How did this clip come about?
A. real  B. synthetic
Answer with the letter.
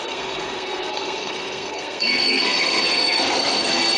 B